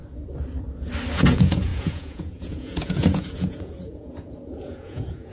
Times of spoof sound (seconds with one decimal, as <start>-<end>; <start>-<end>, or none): 1.1-5.3